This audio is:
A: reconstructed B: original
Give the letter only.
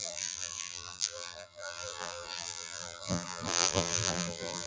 A